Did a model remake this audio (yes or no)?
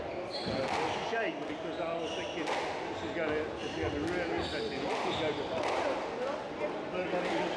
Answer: no